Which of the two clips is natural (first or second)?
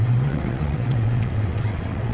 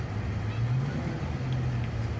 second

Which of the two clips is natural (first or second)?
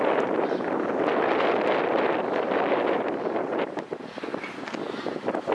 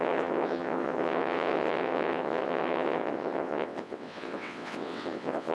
first